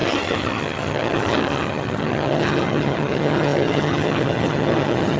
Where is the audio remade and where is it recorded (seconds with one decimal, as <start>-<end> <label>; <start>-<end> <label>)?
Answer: 0.0-5.2 remade